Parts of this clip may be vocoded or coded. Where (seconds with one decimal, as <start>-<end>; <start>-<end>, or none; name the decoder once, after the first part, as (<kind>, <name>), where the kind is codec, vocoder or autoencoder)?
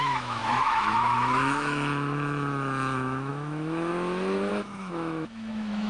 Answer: 0.0-3.9 (autoencoder, DAC-VAE); 4.5-5.9